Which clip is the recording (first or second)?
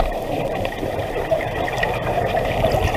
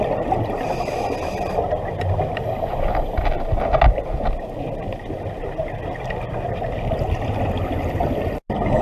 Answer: second